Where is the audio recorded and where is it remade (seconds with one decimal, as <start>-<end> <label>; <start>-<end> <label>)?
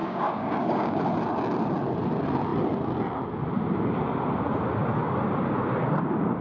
0.0-1.0 remade; 1.0-6.4 recorded